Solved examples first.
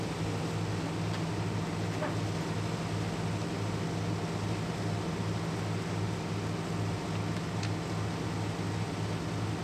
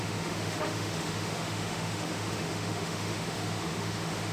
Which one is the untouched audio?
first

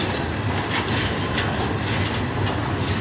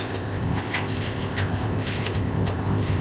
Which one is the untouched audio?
first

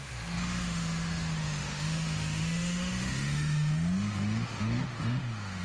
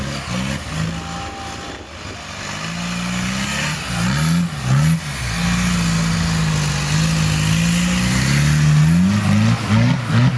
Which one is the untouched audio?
second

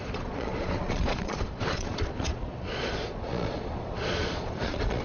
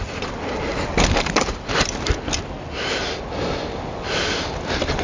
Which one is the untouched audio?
second